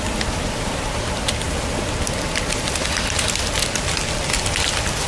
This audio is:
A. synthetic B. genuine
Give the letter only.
B